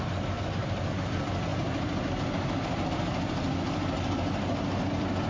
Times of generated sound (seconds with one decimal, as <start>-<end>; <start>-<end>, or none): 0.6-1.1